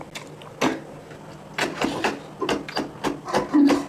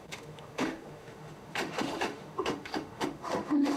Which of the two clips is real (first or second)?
first